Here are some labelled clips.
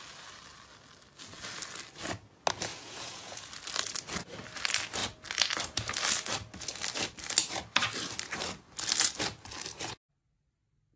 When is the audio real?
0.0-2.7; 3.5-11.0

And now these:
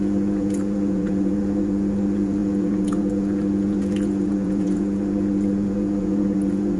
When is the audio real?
none

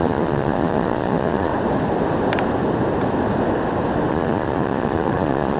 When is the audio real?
1.5-4.1

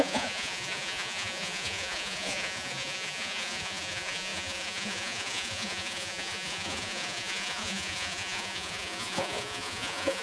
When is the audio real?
none

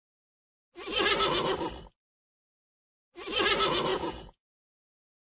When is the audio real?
0.0-3.9; 4.9-5.4

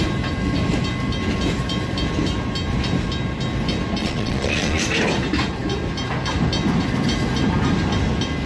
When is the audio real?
0.0-4.0; 4.8-8.5